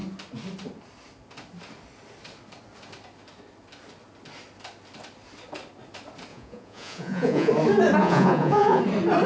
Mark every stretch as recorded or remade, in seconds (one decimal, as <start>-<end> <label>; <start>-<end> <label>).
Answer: 0.0-6.3 recorded; 6.3-7.5 remade; 7.5-8.0 recorded; 8.0-8.8 remade; 8.8-9.3 recorded